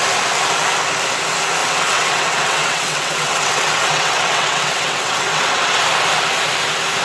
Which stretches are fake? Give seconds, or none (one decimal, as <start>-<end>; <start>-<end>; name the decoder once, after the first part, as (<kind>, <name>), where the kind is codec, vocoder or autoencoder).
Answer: 1.6-5.8 (vocoder, WaveNeXt)